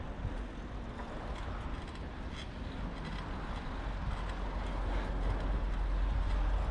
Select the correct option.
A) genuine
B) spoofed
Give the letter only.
A